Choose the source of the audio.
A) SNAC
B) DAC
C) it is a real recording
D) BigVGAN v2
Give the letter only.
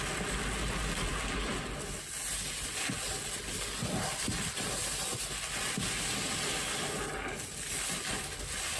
C